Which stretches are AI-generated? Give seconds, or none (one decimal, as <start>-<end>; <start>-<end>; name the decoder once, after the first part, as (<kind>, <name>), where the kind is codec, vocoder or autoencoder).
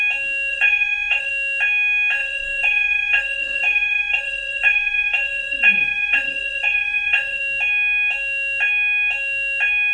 0.5-1.3 (vocoder, Vocos); 2.2-7.4